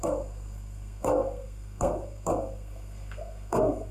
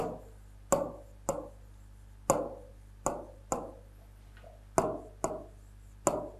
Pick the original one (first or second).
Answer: second